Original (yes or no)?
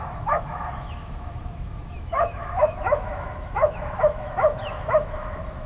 no